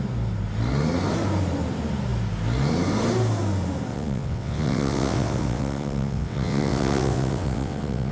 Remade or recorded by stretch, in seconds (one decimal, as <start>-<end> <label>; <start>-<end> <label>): 0.0-3.9 recorded; 3.9-8.1 remade